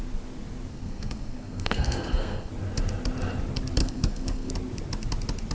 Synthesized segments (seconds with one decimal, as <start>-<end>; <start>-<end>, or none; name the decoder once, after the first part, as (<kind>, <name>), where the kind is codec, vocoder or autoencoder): 0.7-2.5 (codec, SNAC); 3.8-4.5